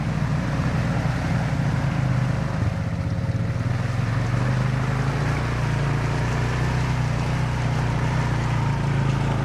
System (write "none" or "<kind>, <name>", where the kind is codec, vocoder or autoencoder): none